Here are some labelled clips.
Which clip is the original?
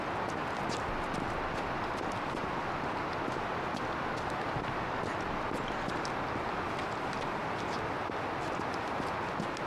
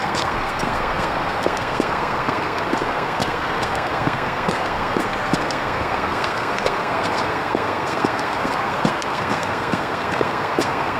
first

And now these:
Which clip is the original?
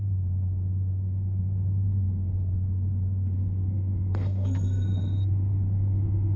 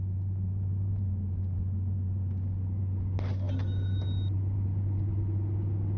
second